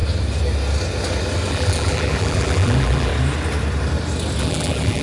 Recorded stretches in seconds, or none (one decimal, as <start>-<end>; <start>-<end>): 0.0-1.5; 3.1-4.4

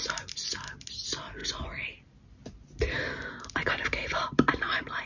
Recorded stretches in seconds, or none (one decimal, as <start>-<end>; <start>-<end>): 0.0-5.1

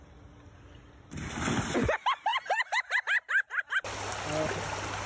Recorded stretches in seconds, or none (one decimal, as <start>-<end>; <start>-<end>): 0.0-2.3; 3.0-5.1

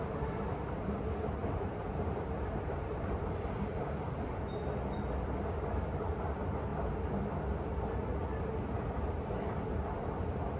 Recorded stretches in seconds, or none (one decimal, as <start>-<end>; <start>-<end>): 0.0-1.4; 4.0-10.6

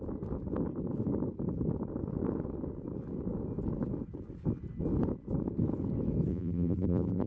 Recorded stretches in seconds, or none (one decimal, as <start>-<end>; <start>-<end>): 0.0-6.3

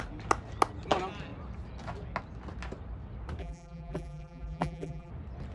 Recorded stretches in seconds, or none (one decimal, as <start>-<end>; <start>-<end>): 0.0-3.4; 5.1-5.5

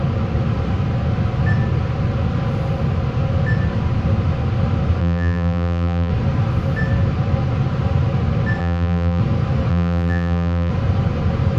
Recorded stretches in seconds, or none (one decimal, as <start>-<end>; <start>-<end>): 0.0-5.0; 6.1-8.6; 9.2-9.7; 10.7-11.6